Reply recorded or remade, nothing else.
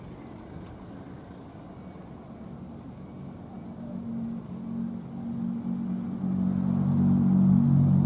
recorded